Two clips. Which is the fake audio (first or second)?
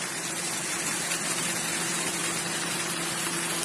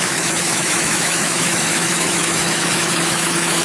second